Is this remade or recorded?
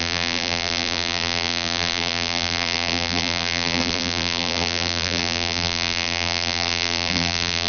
remade